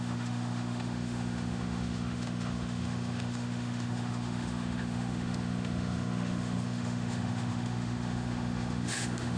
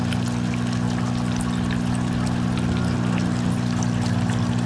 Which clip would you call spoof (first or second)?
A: first